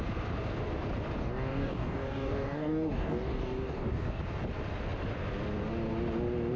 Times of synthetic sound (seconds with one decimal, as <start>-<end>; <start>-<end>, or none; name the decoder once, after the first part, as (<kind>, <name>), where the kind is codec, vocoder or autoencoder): 1.2-4.2 (codec, DAC)